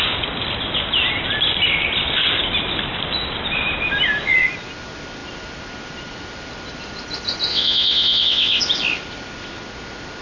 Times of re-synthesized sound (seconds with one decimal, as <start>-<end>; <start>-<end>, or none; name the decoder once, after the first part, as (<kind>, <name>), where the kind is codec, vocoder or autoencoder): 7.5-8.6 (vocoder, WaveNeXt)